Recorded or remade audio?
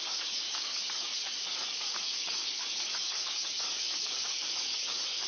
remade